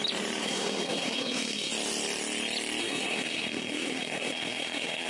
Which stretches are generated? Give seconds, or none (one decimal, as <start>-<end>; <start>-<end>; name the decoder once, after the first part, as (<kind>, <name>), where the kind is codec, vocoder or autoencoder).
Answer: 0.4-1.7 (codec, SNAC); 2.8-5.1